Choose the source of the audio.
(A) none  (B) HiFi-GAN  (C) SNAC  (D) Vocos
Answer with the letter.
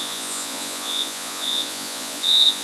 D